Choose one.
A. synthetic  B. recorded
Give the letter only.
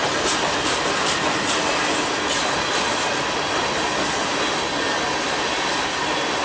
B